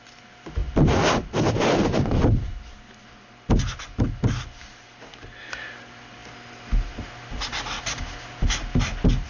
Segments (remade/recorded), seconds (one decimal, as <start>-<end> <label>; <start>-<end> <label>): 0.0-9.3 recorded